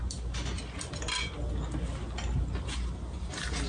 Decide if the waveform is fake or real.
real